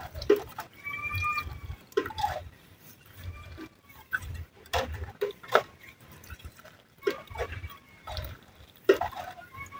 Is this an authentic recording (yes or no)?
no